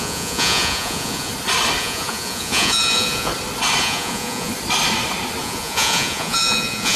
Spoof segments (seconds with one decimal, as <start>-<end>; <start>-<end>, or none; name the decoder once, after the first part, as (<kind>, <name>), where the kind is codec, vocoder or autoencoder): 0.0-1.3 (vocoder, Vocos); 1.8-3.3; 3.8-4.5; 5.4-7.0